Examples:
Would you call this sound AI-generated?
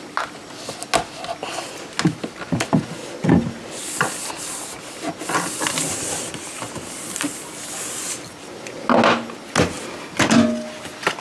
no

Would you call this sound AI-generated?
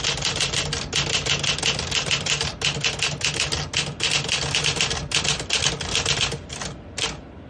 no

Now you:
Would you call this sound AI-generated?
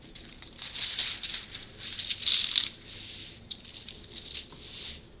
no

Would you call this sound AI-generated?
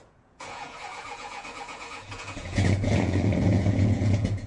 yes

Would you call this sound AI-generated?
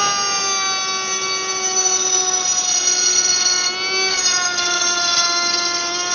no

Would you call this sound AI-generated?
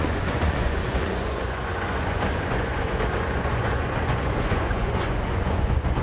yes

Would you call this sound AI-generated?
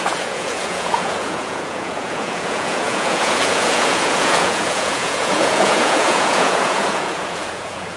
yes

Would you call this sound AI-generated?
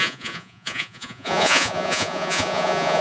yes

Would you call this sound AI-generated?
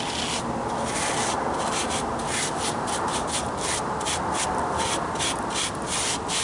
no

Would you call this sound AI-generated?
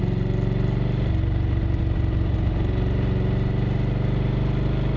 no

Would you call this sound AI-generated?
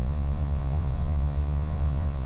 yes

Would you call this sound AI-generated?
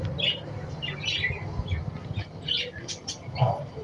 no